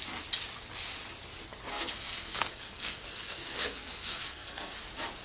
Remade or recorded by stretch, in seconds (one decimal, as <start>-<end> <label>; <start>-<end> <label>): 0.0-1.7 recorded; 1.7-4.8 remade; 4.8-5.2 recorded

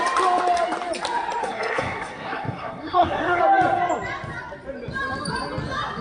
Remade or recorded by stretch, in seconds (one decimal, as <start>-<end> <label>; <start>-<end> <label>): 0.0-1.4 recorded; 1.4-3.4 remade; 3.4-6.0 recorded

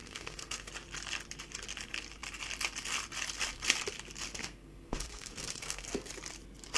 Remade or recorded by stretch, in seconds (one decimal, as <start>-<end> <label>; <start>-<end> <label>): 0.0-0.7 remade; 0.7-4.4 recorded; 4.4-6.1 remade; 6.1-6.8 recorded

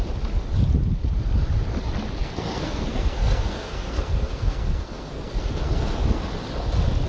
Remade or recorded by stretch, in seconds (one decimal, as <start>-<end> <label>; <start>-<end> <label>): 0.0-2.2 recorded; 2.2-6.2 remade; 6.2-7.1 recorded